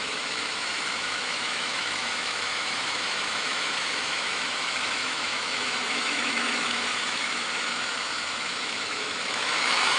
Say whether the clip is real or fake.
fake